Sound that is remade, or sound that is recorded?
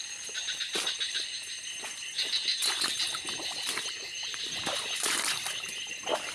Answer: recorded